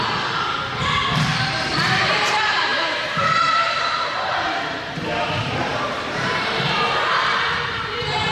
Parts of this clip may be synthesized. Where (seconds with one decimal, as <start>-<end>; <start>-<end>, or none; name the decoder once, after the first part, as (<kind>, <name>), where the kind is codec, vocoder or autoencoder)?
2.1-8.3 (vocoder, BigVGAN v2)